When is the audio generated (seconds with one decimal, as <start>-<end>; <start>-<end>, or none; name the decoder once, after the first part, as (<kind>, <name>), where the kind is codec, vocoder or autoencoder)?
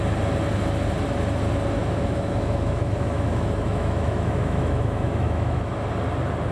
1.8-5.7 (autoencoder, DAC-VAE)